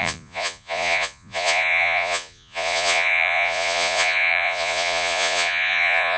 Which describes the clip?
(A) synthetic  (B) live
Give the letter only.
A